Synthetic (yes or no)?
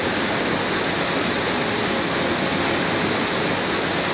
no